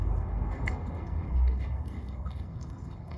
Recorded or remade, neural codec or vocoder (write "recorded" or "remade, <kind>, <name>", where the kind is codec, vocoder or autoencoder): remade, codec, SNAC